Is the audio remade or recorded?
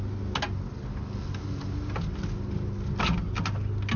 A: recorded